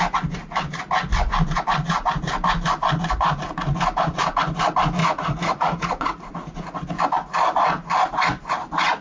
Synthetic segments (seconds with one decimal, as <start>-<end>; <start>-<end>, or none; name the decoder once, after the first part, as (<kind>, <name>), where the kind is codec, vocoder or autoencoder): 5.0-6.8 (vocoder, Vocos)